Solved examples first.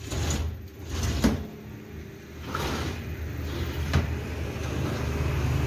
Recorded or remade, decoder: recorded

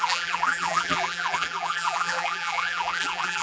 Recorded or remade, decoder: remade, vocoder, BigVGAN v2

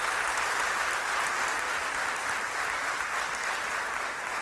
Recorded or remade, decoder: recorded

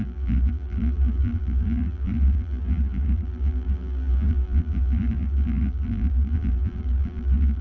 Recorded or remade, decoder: remade, vocoder, BigVGAN v2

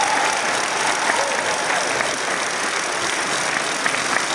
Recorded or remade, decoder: recorded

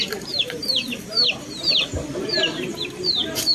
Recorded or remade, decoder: remade, vocoder, BigVGAN v2